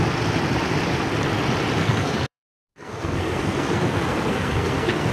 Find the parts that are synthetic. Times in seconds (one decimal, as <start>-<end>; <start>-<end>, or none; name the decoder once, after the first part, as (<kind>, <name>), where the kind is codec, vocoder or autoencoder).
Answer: 1.8-5.1 (codec, SNAC)